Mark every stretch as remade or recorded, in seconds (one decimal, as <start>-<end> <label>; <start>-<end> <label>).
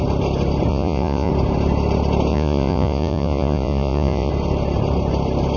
0.0-0.7 recorded; 0.7-1.3 remade; 1.3-2.3 recorded; 2.3-4.3 remade; 4.3-5.6 recorded